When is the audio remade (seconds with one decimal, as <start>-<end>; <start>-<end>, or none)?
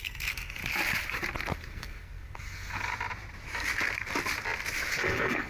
0.0-0.6; 1.6-2.9; 4.9-5.5